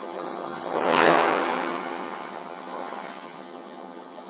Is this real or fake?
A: fake